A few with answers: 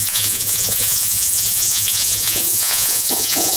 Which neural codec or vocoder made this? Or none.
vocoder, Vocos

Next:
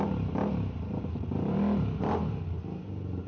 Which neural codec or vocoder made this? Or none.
none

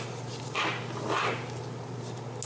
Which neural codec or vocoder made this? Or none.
none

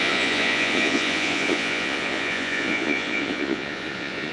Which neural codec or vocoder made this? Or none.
vocoder, Vocos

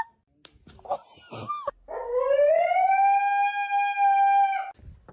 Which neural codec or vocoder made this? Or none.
none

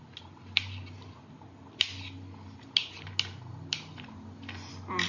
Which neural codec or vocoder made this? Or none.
none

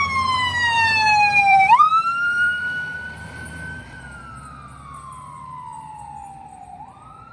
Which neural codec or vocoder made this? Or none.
vocoder, BigVGAN v2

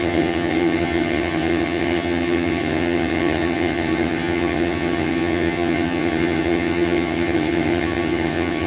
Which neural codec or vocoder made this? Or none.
vocoder, HiFi-GAN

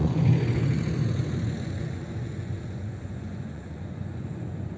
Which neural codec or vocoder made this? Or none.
vocoder, Vocos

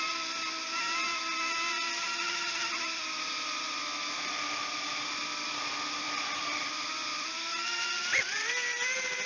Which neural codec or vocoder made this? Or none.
none